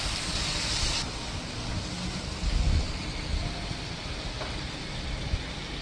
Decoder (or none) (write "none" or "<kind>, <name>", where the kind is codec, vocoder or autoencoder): none